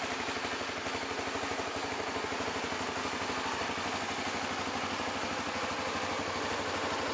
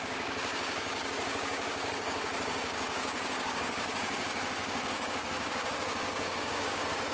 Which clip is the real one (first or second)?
first